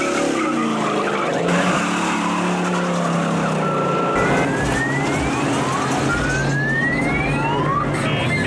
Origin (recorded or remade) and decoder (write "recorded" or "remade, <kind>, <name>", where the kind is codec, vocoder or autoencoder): recorded